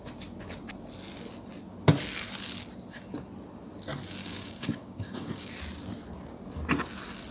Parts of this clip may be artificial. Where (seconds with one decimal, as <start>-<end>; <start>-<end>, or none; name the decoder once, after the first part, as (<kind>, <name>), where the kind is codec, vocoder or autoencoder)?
4.2-5.5 (codec, DAC)